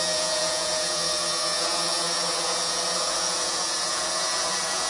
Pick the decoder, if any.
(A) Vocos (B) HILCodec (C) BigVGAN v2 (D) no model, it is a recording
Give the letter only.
A